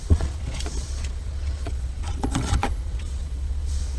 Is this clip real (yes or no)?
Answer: no